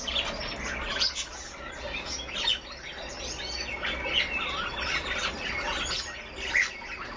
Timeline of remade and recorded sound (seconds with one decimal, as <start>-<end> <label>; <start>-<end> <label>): 0.0-7.2 recorded